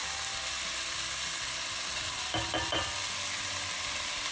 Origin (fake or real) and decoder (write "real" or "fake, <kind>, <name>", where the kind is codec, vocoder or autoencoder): real